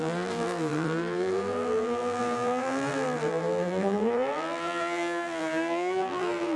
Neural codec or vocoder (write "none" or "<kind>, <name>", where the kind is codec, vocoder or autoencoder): vocoder, BigVGAN v2